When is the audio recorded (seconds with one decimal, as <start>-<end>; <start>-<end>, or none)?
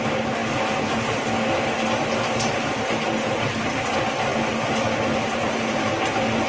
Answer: 0.0-6.5